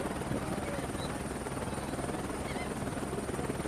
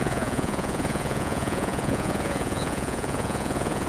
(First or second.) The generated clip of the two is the second